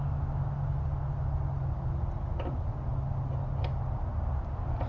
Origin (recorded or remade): recorded